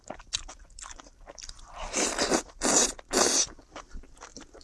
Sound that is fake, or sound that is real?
real